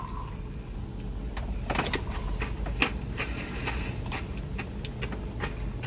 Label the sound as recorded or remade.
recorded